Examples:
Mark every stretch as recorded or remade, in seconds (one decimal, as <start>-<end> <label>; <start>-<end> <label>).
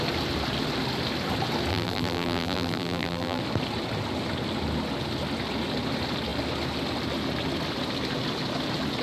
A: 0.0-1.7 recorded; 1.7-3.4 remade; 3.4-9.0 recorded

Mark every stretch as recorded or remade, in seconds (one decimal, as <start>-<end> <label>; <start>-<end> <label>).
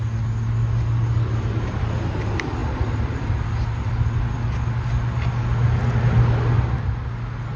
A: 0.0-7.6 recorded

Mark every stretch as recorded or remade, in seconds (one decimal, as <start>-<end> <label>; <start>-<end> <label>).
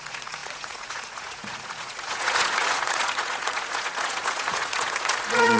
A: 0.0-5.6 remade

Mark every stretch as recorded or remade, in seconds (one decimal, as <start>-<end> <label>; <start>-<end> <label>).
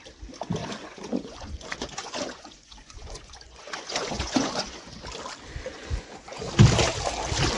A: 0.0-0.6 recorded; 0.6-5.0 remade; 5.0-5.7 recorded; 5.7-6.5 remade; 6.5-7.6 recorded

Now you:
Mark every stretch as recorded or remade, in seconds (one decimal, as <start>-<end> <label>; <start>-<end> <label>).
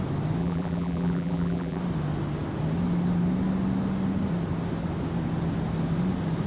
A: 0.0-0.4 recorded; 0.4-1.8 remade; 1.8-6.5 recorded